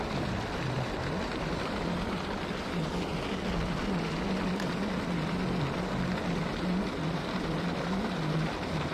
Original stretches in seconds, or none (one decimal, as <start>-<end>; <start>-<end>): 0.0-8.9